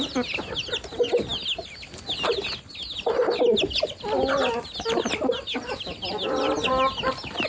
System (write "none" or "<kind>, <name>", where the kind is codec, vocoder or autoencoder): none